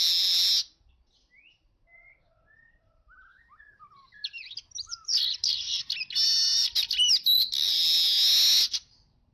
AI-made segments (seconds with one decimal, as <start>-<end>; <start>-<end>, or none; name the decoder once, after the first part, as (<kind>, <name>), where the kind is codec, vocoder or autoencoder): 3.3-6.0 (vocoder, BigVGAN v2); 6.5-7.8